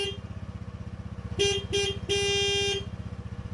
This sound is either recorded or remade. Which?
recorded